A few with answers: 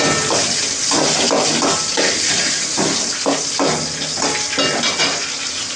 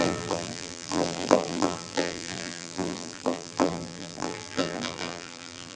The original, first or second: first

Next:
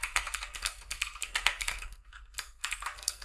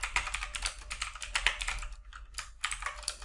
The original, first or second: second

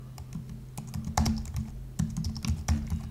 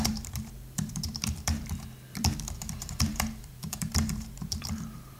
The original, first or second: first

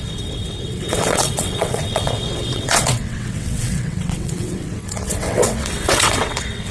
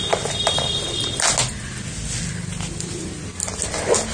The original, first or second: second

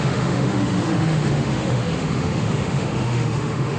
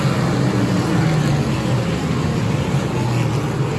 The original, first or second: second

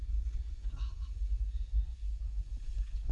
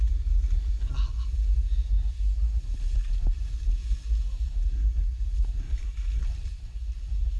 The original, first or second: second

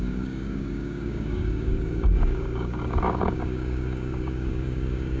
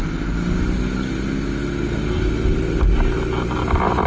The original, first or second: second